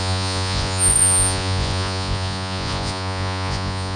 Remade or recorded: remade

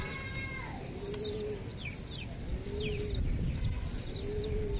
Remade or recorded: recorded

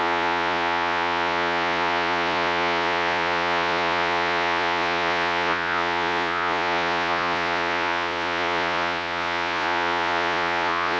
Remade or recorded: remade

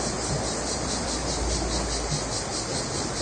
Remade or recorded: recorded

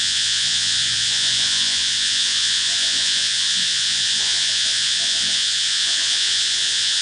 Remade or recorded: remade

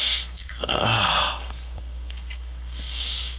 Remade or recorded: remade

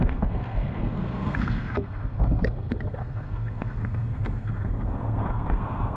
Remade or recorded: remade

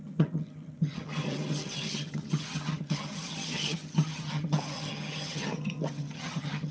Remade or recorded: remade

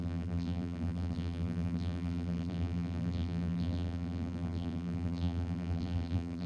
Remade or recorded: remade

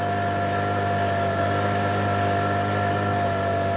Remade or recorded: recorded